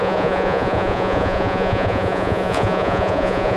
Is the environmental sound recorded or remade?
remade